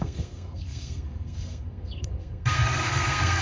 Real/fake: fake